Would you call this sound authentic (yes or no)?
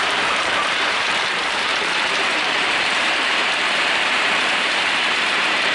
no